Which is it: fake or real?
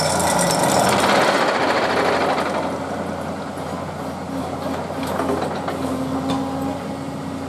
real